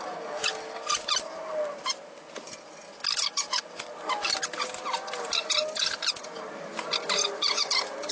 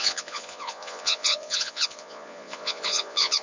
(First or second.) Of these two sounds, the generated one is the second